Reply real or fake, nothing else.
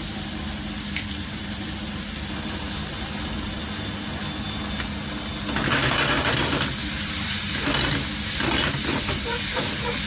real